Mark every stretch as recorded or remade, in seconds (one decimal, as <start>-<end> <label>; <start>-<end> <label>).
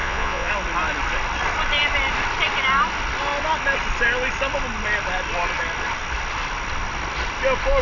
0.0-0.5 remade; 0.5-7.8 recorded